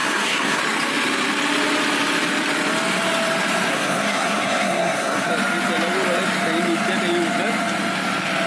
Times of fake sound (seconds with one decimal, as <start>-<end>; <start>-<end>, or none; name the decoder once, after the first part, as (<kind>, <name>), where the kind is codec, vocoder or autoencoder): 0.0-0.6 (codec, SNAC); 3.7-5.3